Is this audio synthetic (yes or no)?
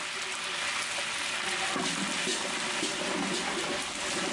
no